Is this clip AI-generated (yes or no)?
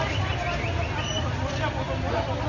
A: no